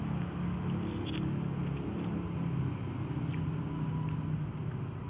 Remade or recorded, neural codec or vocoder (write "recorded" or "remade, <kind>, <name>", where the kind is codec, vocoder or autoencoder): recorded